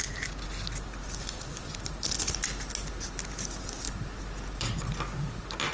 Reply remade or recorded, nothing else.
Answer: recorded